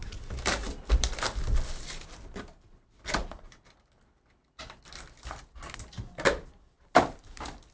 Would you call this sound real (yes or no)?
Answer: yes